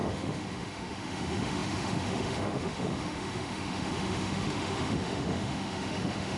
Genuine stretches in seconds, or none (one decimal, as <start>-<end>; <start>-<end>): none